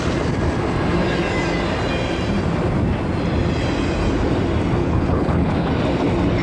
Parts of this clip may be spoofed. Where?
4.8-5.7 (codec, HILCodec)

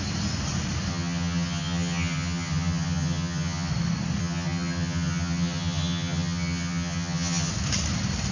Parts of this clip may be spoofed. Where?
0.9-3.7 (vocoder, HiFi-GAN); 4.2-7.5

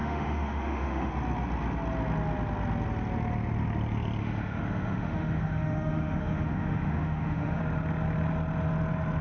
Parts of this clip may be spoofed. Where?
0.0-1.1 (autoencoder, DAC-VAE); 4.2-7.6

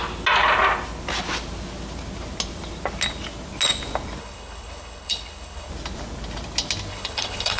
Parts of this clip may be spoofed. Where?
4.2-5.7 (codec, HILCodec); 6.9-7.6

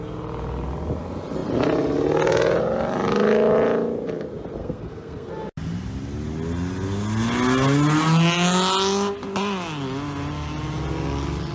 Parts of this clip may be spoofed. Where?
4.6-5.3 (codec, SNAC)

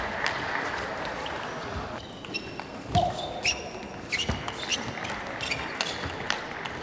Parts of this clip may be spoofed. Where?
none

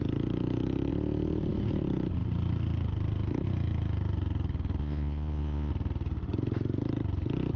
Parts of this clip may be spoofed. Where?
4.8-5.7 (vocoder, Vocos)

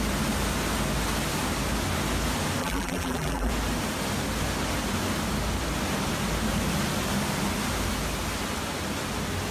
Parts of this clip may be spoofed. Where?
2.6-3.5 (vocoder, BigVGAN v2)